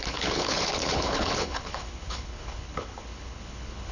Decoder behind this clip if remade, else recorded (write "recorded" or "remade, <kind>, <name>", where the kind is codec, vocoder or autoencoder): remade, codec, HILCodec